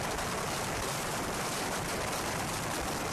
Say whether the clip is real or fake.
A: fake